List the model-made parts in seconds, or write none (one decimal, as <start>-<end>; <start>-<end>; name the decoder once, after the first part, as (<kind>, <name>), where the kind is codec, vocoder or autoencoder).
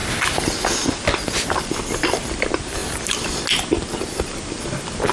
none